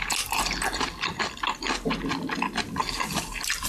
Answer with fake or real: real